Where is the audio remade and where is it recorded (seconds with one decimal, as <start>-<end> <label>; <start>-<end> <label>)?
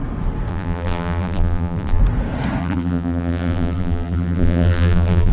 0.0-0.5 recorded; 0.5-2.0 remade; 2.0-2.6 recorded; 2.6-5.3 remade